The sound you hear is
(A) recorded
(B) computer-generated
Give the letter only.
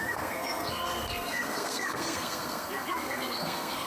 B